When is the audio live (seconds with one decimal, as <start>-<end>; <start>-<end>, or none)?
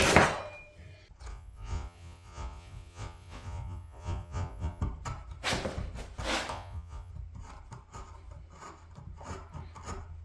0.0-1.3; 4.8-6.5; 7.1-10.2